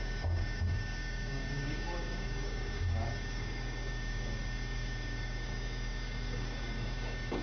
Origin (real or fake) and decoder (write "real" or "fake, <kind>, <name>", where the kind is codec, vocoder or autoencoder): fake, codec, DAC